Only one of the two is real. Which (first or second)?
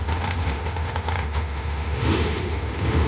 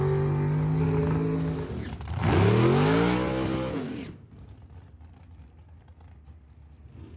second